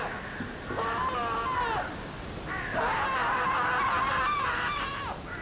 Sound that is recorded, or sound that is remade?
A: recorded